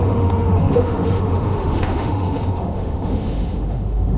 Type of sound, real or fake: fake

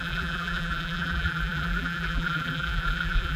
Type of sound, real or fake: fake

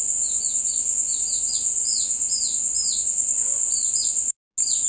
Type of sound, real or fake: real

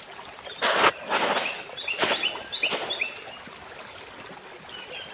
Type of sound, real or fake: real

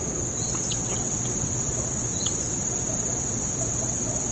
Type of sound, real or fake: fake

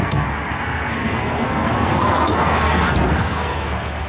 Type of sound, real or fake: fake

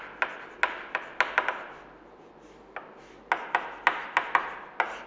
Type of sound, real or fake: real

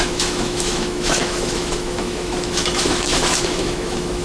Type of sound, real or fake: fake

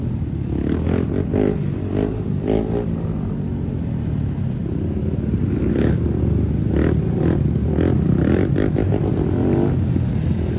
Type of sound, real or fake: real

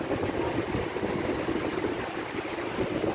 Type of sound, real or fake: real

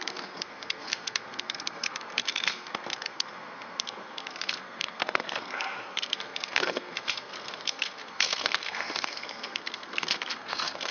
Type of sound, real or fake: fake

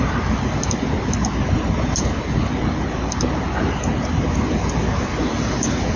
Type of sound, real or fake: real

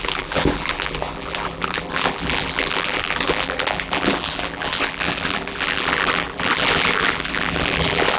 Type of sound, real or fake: fake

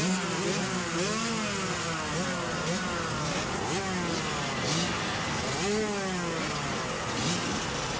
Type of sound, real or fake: real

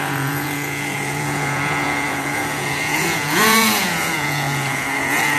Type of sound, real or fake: fake